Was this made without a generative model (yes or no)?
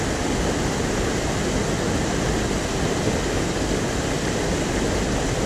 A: yes